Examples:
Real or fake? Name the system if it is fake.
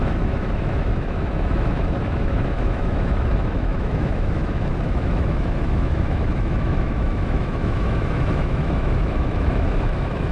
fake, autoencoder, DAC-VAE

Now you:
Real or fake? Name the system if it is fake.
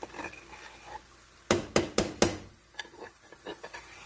real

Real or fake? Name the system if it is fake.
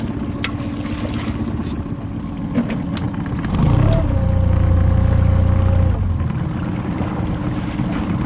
real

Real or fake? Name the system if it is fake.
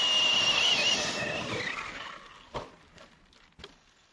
real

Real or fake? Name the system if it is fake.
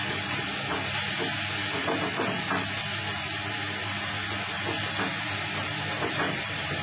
real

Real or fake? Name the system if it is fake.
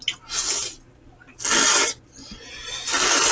real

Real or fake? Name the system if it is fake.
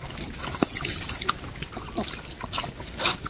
real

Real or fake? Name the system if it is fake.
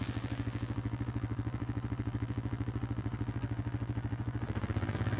fake, vocoder, BigVGAN v2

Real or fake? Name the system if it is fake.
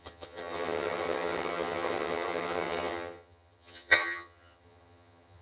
fake, vocoder, HiFi-GAN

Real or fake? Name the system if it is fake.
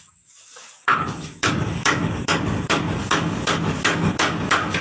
fake, codec, DAC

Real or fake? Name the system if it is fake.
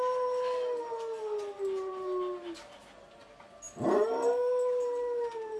real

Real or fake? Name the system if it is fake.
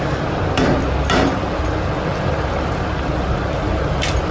fake, vocoder, BigVGAN v2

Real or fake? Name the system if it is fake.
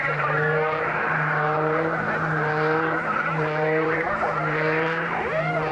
fake, vocoder, BigVGAN v2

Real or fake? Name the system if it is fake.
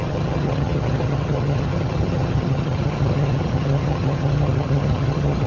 fake, vocoder, HiFi-GAN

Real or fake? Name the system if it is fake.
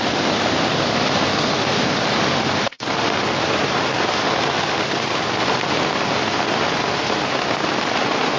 real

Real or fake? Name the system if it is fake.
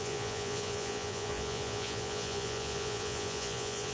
fake, vocoder, Vocos